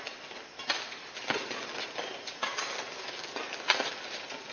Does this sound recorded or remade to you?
recorded